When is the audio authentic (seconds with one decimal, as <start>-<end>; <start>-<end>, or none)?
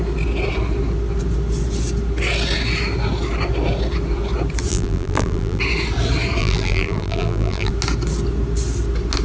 0.0-4.7; 5.6-6.4; 7.7-9.2